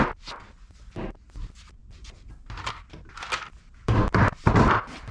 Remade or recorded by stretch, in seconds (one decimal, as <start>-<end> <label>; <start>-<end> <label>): 0.0-1.8 recorded; 1.8-5.1 remade